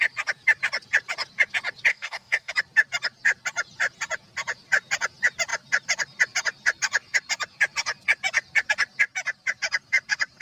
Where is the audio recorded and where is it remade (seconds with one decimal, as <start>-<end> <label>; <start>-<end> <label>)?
0.0-1.9 recorded; 1.9-2.5 remade; 2.5-10.4 recorded